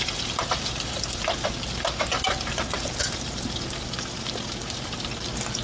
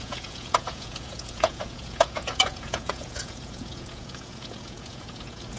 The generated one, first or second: second